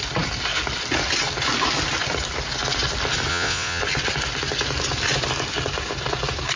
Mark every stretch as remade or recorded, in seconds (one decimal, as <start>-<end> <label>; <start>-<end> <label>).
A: 0.0-3.3 recorded; 3.3-3.8 remade; 3.8-6.6 recorded